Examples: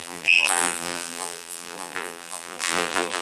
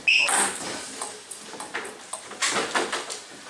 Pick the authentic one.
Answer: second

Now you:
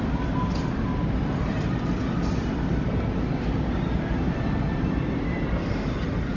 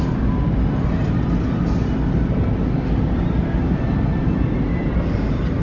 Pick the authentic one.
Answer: second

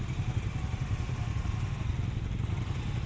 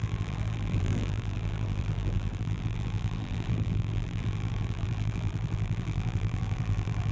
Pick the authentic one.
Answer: first